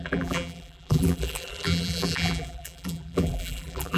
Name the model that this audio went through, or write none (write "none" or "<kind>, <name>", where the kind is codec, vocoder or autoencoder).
vocoder, BigVGAN v2